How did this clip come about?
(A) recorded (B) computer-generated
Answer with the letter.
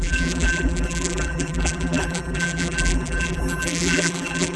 B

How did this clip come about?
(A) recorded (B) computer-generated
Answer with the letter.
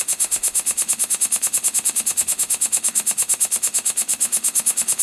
B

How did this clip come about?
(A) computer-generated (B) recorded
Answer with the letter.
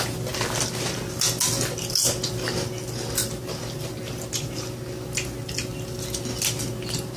B